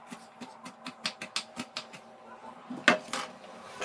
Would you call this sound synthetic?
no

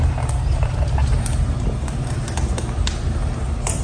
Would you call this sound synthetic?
yes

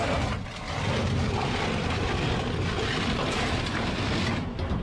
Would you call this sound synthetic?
no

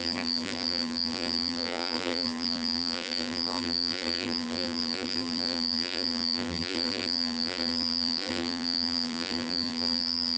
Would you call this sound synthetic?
yes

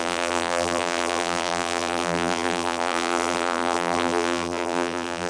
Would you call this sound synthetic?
yes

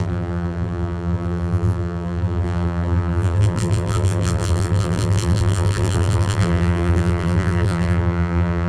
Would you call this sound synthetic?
yes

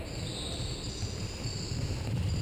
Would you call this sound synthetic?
no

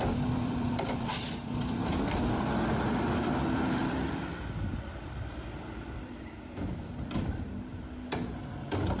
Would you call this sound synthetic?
yes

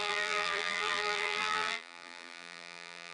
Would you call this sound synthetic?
yes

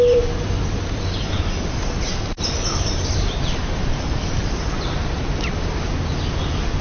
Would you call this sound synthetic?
yes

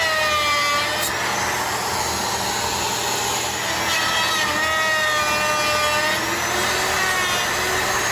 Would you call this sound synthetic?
no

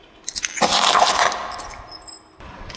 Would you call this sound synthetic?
no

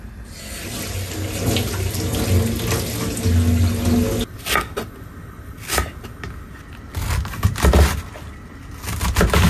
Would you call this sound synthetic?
no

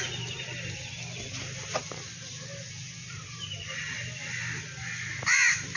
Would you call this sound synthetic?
no